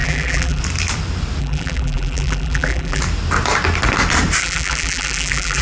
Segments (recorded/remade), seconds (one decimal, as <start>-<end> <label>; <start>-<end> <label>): 0.0-0.6 remade; 0.6-1.4 recorded; 1.4-3.0 remade; 3.0-4.4 recorded; 4.4-5.6 remade